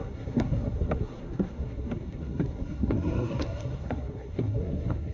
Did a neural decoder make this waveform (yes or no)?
yes